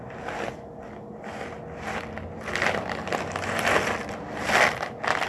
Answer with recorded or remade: recorded